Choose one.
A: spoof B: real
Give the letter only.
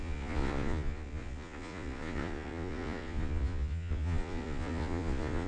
A